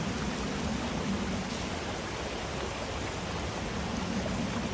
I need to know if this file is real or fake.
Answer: real